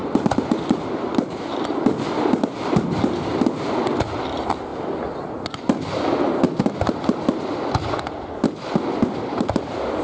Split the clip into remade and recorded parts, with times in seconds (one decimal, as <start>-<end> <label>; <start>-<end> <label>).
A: 0.0-4.7 remade; 4.7-6.6 recorded; 6.6-10.0 remade